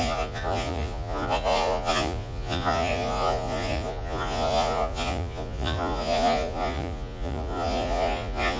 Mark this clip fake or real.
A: fake